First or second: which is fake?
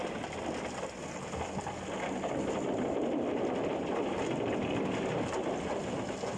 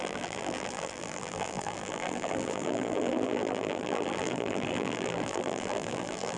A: second